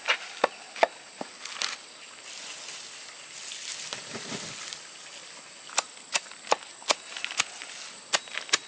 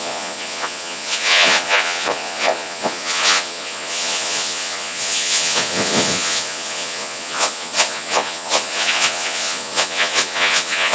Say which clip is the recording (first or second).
first